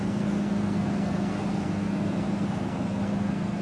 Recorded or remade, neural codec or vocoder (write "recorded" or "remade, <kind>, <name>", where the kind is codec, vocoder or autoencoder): remade, codec, SNAC